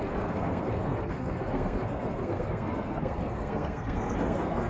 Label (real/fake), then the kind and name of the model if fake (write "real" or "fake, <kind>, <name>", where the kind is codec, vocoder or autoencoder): fake, codec, SNAC